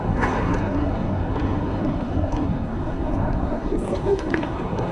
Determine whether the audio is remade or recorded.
remade